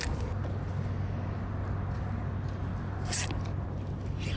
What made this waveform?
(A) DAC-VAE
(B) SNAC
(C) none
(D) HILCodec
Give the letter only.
C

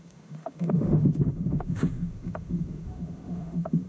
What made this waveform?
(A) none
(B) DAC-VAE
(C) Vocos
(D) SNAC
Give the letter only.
B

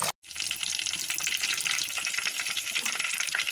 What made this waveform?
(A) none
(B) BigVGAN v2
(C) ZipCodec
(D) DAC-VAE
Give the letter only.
A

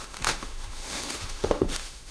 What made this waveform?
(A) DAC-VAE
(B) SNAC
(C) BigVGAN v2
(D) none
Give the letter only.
A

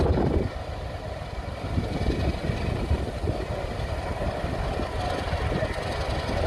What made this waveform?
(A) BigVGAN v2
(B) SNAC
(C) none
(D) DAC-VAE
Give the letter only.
C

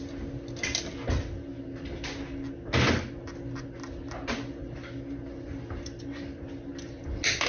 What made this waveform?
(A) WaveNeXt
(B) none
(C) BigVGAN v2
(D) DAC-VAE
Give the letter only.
B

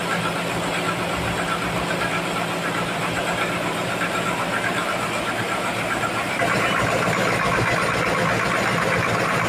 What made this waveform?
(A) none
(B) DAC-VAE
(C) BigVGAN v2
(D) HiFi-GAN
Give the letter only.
A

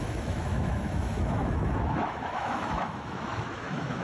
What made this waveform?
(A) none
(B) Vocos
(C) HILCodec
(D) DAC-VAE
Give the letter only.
D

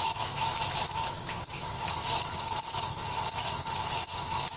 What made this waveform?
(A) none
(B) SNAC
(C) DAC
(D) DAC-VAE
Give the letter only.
D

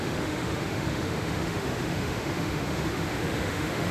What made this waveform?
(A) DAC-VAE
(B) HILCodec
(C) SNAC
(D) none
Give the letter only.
A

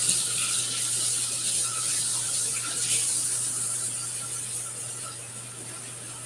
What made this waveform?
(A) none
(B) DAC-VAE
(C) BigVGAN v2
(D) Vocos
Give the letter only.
A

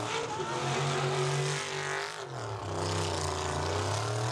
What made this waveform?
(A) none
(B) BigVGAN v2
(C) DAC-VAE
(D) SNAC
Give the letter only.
A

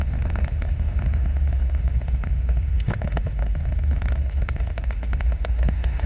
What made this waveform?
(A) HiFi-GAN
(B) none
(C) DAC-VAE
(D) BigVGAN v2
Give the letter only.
C